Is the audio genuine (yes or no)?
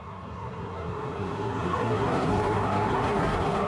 no